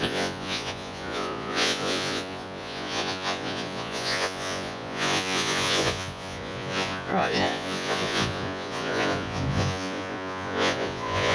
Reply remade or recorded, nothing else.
remade